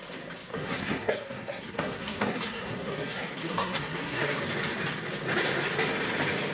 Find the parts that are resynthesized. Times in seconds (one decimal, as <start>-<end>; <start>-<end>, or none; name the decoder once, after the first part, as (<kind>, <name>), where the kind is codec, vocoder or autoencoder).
0.5-4.4 (codec, SNAC)